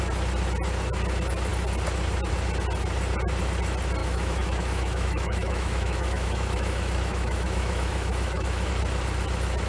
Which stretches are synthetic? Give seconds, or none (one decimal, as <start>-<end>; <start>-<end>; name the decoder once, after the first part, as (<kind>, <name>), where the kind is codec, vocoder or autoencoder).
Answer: 4.0-8.7 (autoencoder, DAC-VAE)